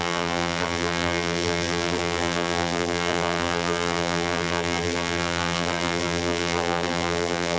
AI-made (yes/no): yes